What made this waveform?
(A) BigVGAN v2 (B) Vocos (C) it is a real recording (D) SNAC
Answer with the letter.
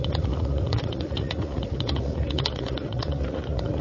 B